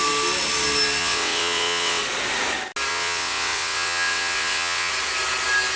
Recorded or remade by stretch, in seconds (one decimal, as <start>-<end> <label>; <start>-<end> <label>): 0.0-1.0 recorded; 1.0-2.0 remade; 2.0-2.9 recorded; 2.9-4.9 remade; 4.9-5.8 recorded